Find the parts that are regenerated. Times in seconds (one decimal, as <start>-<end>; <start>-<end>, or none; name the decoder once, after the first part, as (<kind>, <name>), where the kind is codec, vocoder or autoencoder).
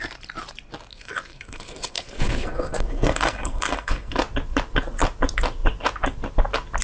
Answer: 0.9-4.2 (codec, SNAC)